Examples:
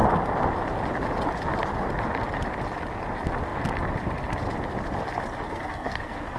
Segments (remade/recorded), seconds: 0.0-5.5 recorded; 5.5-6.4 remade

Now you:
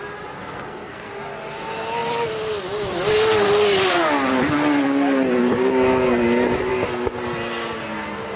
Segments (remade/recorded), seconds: 0.0-0.4 recorded; 0.4-1.1 remade; 1.1-8.4 recorded

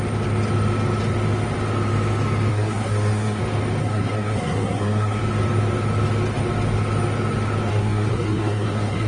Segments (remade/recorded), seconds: 0.0-2.5 recorded; 2.5-3.4 remade; 3.4-3.8 recorded; 3.8-5.2 remade; 5.2-7.7 recorded; 7.7-9.1 remade